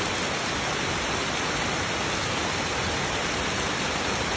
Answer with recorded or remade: recorded